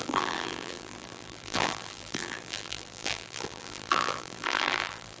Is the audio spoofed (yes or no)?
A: yes